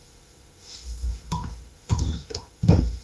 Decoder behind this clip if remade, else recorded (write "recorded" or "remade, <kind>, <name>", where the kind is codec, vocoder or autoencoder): remade, autoencoder, DAC-VAE